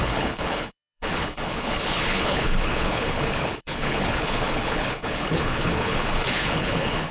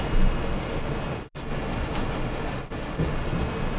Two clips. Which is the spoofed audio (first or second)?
first